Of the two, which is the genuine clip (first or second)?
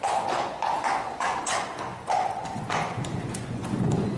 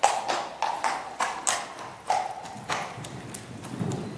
second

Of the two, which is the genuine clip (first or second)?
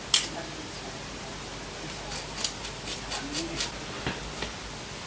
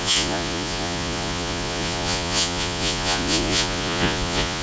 first